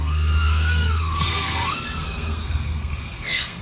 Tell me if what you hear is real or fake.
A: fake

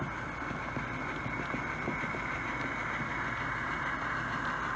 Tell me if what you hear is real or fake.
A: real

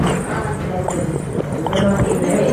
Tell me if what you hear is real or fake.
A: real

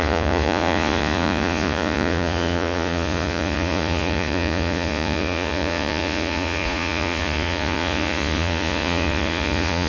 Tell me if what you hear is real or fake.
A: fake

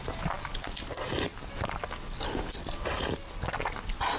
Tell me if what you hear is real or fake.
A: real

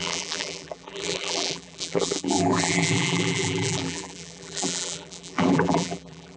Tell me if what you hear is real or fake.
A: fake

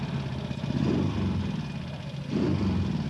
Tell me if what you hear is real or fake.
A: real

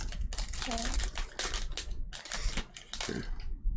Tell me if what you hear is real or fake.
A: real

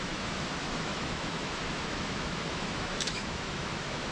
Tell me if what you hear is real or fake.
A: fake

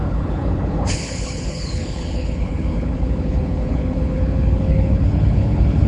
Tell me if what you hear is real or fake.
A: fake